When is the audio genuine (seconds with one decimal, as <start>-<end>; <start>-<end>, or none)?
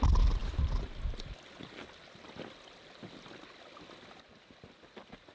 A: 0.0-5.3